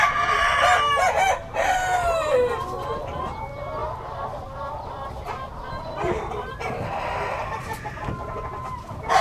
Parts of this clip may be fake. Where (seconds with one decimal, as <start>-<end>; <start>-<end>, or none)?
none